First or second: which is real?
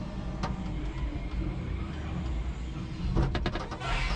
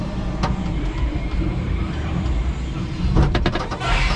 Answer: first